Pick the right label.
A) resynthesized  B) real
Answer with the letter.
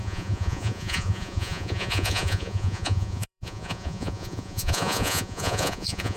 A